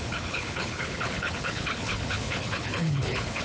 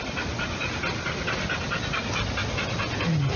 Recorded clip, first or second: second